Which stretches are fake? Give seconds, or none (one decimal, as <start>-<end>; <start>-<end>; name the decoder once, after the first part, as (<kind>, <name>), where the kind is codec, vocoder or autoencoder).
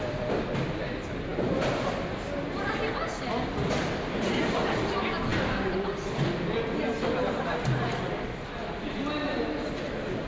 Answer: none